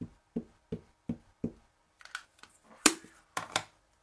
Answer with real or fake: real